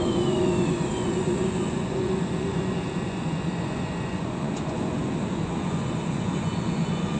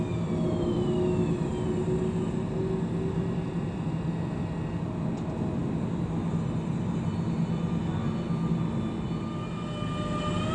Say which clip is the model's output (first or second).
first